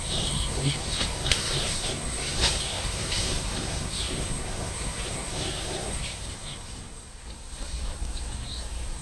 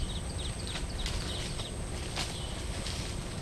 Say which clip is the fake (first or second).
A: first